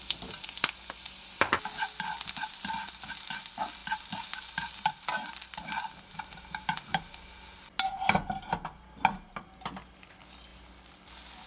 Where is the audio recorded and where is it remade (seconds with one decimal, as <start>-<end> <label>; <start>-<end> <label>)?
0.0-11.5 recorded